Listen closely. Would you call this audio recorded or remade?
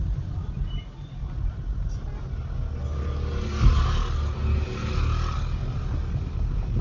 recorded